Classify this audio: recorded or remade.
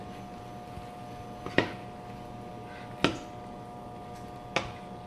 recorded